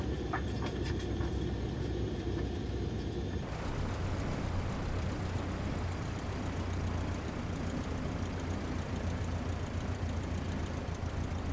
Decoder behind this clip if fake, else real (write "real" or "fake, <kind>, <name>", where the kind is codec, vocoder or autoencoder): fake, vocoder, BigVGAN v2